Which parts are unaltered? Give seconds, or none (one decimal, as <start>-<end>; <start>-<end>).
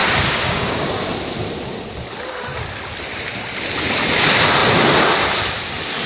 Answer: 0.8-6.1